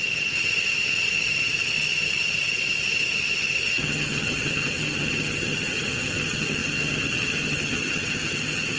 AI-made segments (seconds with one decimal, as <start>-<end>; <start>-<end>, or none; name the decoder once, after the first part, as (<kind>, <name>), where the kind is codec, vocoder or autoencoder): 0.0-8.8 (vocoder, HiFi-GAN)